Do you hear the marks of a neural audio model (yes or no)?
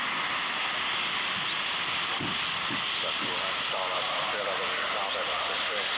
no